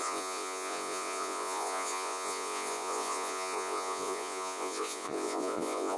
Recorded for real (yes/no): no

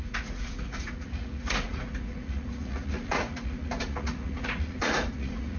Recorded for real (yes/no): no